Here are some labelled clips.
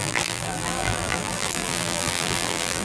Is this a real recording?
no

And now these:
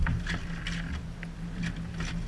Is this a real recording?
yes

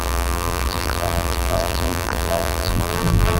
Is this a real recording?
no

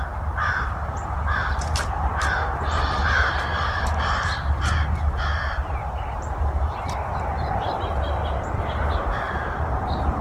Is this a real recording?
no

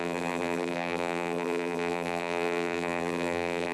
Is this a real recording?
no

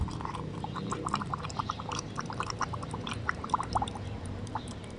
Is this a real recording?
no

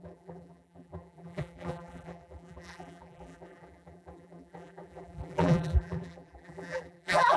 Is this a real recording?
no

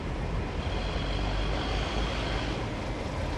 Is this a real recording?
yes